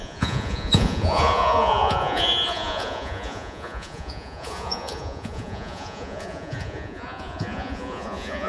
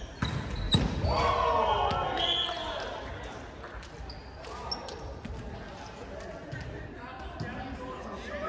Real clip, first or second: second